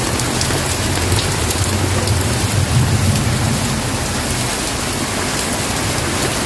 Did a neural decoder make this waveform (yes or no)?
no